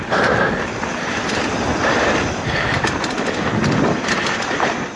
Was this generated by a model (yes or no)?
no